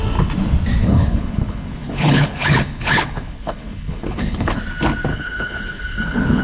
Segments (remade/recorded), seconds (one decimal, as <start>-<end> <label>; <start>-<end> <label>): 0.0-0.8 recorded; 0.8-4.6 remade; 4.6-5.1 recorded; 5.1-6.4 remade